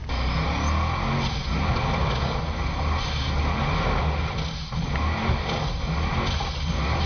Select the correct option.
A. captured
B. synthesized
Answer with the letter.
A